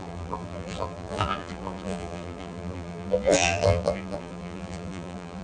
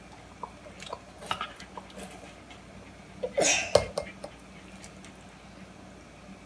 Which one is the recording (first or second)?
second